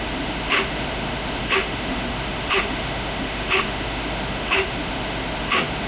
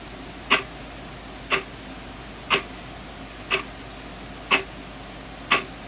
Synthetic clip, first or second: first